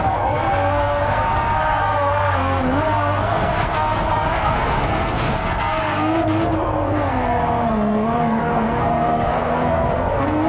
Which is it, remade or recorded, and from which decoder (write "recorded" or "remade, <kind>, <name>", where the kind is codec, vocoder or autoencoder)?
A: remade, codec, SNAC